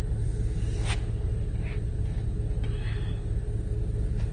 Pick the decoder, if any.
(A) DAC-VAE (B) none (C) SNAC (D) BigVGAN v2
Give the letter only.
B